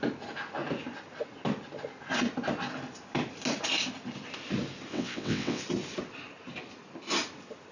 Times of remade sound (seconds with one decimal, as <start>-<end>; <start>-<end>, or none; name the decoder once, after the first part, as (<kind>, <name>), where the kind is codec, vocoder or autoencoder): 4.9-5.6 (vocoder, WaveNeXt)